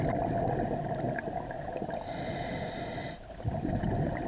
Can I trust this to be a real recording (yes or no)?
yes